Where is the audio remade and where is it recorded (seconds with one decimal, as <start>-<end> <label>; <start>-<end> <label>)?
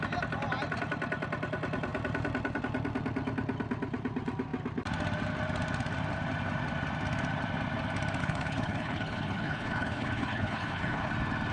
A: 0.0-8.2 recorded; 8.2-11.1 remade; 11.1-11.5 recorded